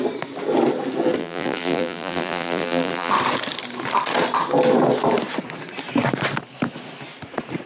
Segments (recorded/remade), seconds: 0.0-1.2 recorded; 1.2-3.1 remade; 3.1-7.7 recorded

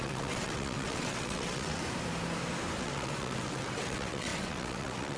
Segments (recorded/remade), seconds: 0.0-1.8 remade; 1.8-2.8 recorded; 2.8-5.2 remade

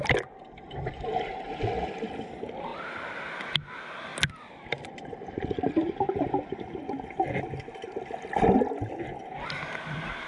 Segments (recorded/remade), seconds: 0.0-4.1 recorded; 4.1-6.3 remade; 6.3-10.3 recorded